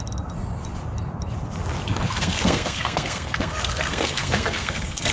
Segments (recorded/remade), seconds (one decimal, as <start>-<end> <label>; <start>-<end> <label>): 0.0-1.9 recorded; 1.9-5.1 remade